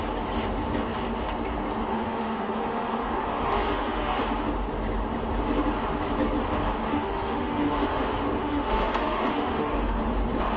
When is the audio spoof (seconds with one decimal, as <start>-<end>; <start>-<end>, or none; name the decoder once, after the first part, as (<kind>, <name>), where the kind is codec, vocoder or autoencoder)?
1.9-4.2 (autoencoder, DAC-VAE); 6.9-8.0; 8.4-10.1